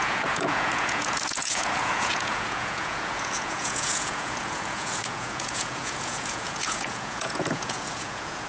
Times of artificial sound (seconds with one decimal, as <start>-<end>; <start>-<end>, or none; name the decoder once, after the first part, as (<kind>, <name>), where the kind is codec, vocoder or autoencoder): 0.0-8.5 (vocoder, Vocos)